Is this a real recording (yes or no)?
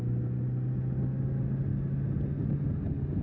yes